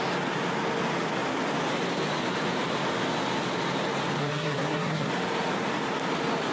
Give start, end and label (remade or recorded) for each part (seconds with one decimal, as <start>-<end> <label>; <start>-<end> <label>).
0.0-4.2 recorded; 4.2-5.1 remade; 5.1-6.5 recorded